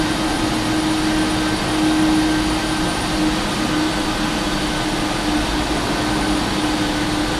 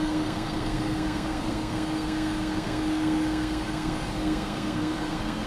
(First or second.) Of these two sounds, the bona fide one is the first